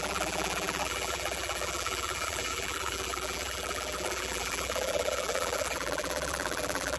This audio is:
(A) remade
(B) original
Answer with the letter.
A